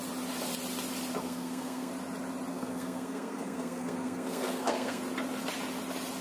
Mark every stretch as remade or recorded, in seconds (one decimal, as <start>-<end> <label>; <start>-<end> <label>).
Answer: 0.0-1.2 recorded; 1.2-1.9 remade; 1.9-2.5 recorded; 2.5-5.0 remade; 5.0-6.2 recorded